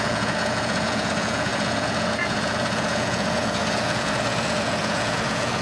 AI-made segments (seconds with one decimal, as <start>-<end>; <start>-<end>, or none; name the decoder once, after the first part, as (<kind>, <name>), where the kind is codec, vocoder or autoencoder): 0.0-5.6 (vocoder, Vocos)